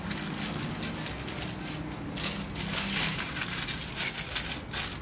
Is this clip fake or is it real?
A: real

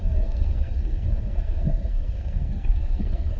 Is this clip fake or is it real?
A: fake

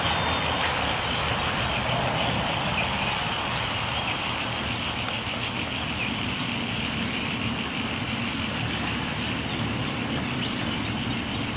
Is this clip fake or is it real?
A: real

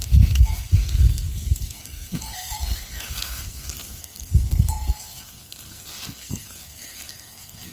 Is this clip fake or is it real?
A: fake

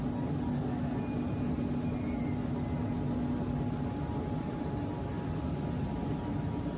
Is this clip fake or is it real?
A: real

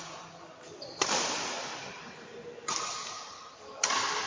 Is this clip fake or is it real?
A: real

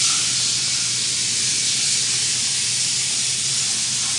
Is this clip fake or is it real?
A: real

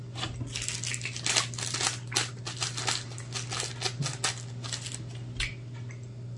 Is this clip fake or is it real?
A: real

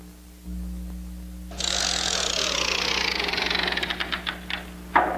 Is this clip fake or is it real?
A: real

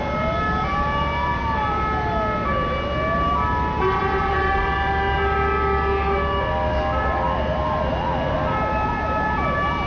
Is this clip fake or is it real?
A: real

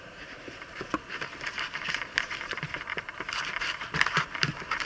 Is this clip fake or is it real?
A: fake